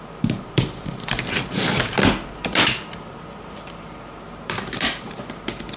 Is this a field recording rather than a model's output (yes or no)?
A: yes